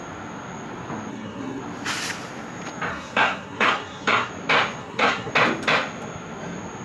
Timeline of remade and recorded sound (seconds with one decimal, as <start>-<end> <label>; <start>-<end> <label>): 0.0-1.1 recorded; 1.1-1.6 remade; 1.6-2.9 recorded; 2.9-4.3 remade; 4.3-4.8 recorded; 4.8-5.3 remade; 5.3-6.8 recorded